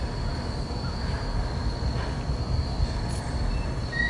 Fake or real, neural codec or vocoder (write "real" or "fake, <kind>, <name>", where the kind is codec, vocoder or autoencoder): real